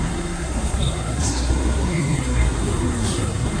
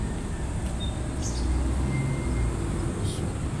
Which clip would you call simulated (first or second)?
first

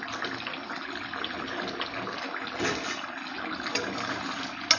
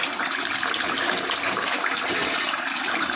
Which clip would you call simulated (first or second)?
second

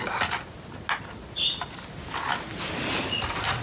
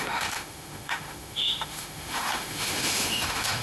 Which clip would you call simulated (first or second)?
second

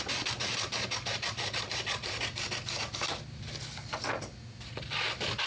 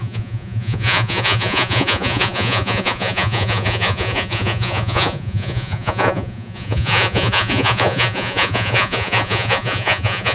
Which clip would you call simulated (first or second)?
second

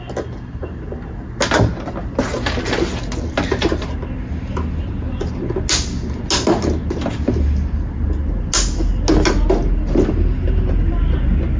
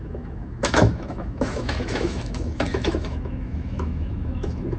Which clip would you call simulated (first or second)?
second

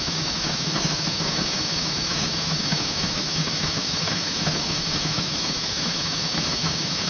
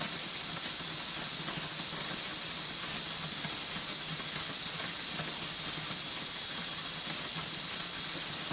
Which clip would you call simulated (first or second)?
first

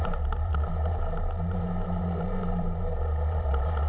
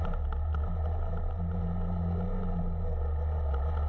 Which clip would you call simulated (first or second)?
first